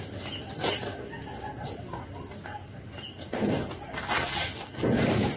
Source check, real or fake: real